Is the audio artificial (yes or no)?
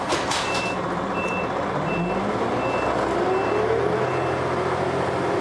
no